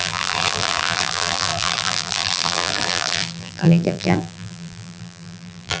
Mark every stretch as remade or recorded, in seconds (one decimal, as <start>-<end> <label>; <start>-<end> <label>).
0.0-5.8 remade